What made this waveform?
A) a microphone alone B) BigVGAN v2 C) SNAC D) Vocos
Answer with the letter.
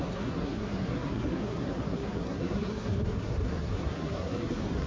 C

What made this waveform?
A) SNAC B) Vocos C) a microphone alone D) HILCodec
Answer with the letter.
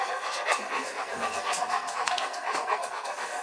A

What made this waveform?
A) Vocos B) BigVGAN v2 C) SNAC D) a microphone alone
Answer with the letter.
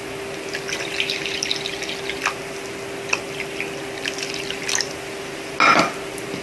D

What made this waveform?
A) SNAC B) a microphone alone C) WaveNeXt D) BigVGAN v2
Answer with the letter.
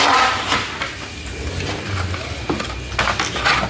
B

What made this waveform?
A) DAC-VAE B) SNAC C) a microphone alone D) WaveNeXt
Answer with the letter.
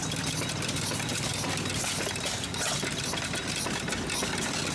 C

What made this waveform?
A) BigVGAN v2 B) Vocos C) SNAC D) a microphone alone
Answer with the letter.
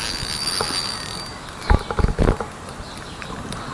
D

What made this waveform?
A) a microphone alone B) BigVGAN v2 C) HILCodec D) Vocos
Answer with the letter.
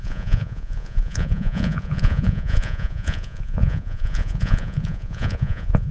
D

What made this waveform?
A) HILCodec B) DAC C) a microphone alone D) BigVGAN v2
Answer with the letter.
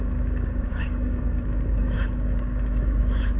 B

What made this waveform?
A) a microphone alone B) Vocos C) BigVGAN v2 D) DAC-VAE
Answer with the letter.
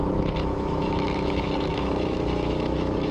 D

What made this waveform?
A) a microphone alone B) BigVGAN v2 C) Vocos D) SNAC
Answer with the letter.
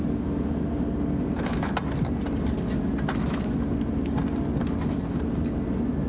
A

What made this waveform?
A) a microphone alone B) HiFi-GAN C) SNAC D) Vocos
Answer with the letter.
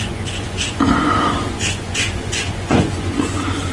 D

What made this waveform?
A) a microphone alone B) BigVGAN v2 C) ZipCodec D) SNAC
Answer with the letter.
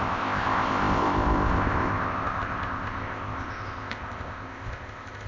C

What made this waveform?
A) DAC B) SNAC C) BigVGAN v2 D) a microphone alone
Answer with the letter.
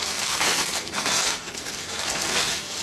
B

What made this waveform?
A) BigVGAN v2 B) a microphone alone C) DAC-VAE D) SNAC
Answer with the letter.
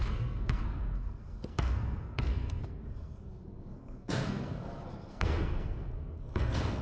D